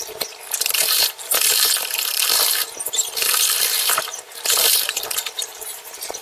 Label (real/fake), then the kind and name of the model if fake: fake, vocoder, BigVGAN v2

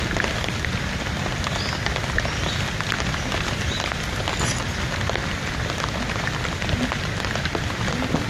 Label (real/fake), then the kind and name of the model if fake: real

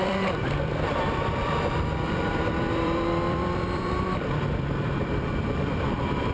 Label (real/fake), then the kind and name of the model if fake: fake, vocoder, BigVGAN v2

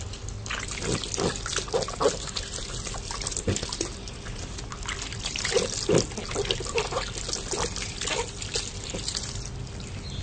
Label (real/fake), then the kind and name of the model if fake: real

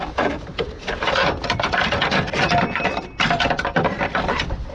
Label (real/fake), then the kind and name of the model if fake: fake, vocoder, BigVGAN v2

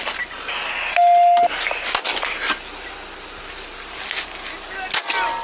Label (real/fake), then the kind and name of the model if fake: real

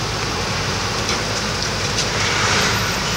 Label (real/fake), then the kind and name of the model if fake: real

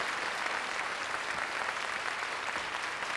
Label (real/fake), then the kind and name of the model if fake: fake, vocoder, BigVGAN v2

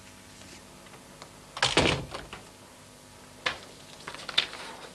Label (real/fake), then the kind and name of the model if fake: real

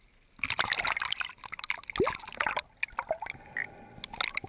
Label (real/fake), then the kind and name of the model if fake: real